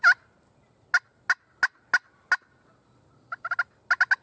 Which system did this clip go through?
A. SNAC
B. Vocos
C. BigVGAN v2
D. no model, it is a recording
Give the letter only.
D